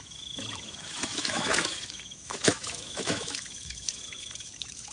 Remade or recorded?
remade